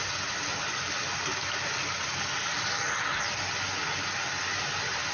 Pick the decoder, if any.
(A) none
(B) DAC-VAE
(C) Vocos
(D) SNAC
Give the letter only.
A